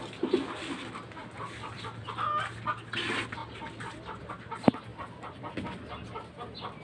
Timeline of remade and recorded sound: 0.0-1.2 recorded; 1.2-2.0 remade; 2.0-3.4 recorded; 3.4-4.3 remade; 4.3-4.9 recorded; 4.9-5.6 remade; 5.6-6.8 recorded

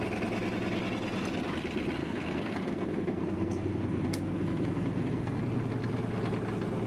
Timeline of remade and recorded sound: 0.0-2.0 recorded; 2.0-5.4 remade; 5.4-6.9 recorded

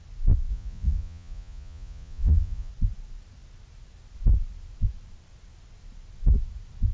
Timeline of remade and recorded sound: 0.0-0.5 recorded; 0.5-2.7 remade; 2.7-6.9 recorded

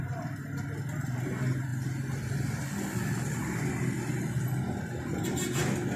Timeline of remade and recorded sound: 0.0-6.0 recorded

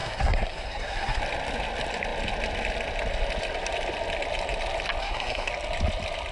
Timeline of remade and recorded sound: 0.0-1.2 remade; 1.2-5.0 recorded; 5.0-5.5 remade; 5.5-6.3 recorded

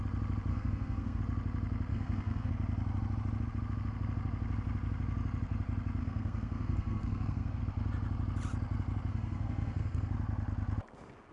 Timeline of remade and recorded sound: 0.0-0.5 recorded; 0.5-1.2 remade; 1.2-1.9 recorded; 1.9-2.5 remade; 2.5-6.0 recorded; 6.0-7.6 remade; 7.6-9.1 recorded; 9.1-10.1 remade; 10.1-11.3 recorded